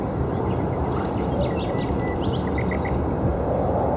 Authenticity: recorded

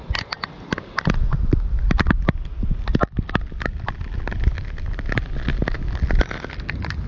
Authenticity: recorded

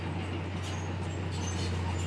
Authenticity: recorded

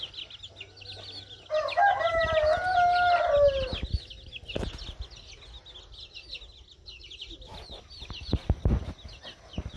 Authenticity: recorded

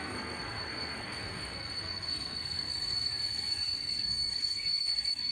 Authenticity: remade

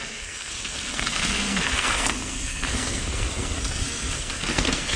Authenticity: remade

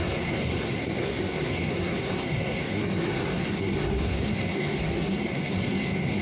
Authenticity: remade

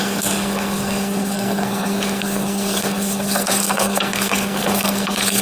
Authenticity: remade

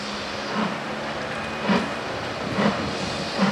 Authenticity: recorded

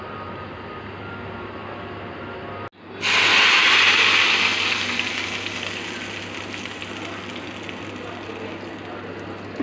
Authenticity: recorded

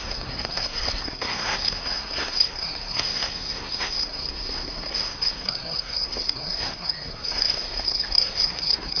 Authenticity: remade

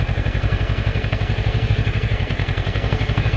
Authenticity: remade